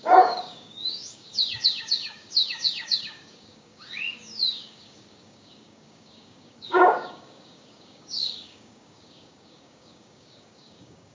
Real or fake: fake